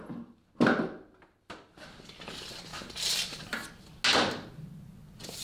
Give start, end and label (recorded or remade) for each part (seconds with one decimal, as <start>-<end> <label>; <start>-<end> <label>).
0.0-5.4 recorded